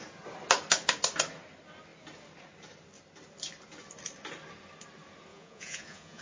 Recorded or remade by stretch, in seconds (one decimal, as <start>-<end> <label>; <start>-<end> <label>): 0.0-5.3 recorded; 5.3-6.2 remade